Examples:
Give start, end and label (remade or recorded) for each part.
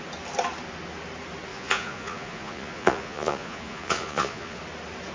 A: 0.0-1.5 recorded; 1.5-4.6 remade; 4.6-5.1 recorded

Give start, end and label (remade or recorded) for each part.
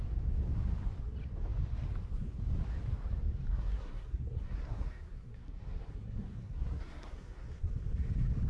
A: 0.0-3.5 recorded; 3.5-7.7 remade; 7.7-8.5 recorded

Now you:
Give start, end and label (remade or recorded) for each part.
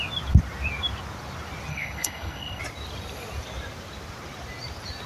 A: 0.0-1.7 recorded; 1.7-2.6 remade; 2.6-5.1 recorded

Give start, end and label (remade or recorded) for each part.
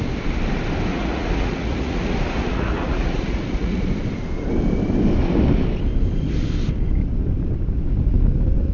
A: 0.0-0.9 recorded; 0.9-3.9 remade; 3.9-8.7 recorded